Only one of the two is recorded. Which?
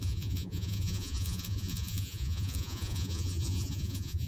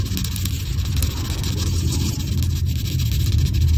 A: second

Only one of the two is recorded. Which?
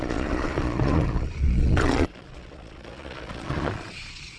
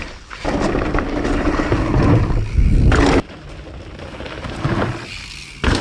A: second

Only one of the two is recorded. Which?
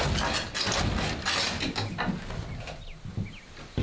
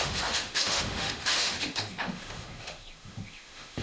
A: first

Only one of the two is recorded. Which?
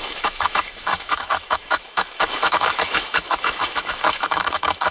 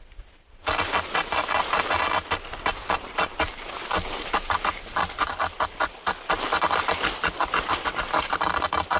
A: second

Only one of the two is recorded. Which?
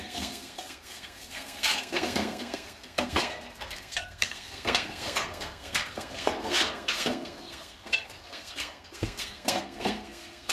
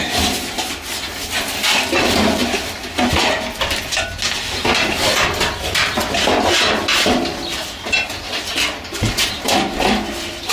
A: second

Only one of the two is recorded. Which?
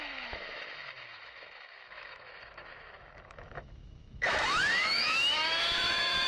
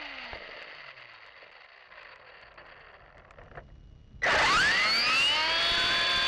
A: second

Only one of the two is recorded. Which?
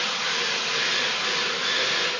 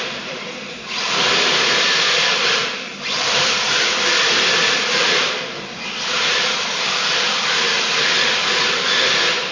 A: first